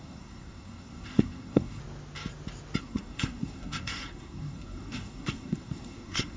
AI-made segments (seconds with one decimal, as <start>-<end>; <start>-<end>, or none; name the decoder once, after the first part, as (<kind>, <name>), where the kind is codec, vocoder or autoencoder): 0.0-1.8 (codec, SNAC); 2.8-6.4